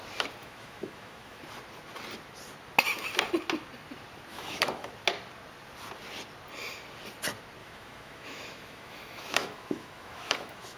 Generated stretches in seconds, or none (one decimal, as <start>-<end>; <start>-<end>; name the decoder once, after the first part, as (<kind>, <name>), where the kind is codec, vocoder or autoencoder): 0.4-1.4 (autoencoder, DAC-VAE); 4.3-4.9; 7.6-10.8